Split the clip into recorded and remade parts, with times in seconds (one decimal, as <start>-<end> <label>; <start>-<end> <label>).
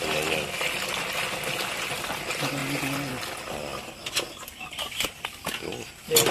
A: 0.0-6.3 recorded